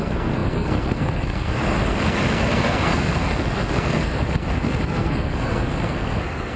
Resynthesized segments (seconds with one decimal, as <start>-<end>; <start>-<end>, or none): 0.0-6.6